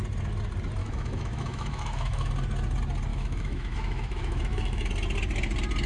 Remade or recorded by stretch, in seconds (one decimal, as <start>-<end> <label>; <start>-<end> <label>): 0.0-0.8 recorded; 0.8-2.3 remade; 2.3-3.1 recorded; 3.1-4.9 remade; 4.9-5.9 recorded